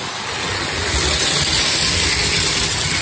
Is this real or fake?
real